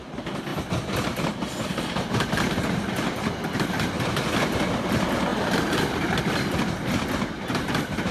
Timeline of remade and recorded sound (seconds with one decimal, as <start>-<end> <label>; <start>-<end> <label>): 0.0-0.5 recorded; 0.5-3.9 remade; 3.9-8.1 recorded